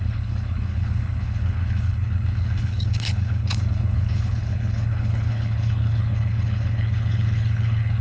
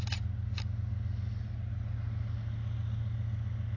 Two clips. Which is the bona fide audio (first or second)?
second